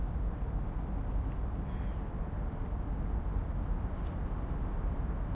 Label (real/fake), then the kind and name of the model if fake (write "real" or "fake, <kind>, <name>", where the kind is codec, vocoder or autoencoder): real